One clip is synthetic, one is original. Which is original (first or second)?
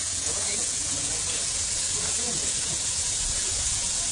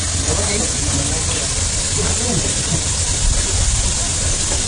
second